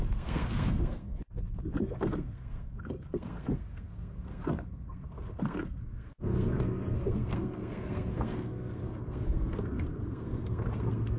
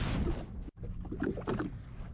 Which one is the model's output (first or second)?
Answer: first